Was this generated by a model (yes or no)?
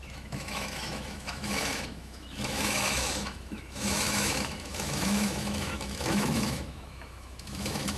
yes